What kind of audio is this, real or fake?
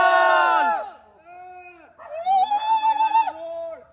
real